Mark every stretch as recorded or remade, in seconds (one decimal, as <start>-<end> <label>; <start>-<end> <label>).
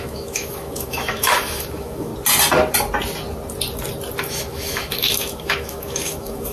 0.0-2.1 remade; 2.1-4.2 recorded; 4.2-6.5 remade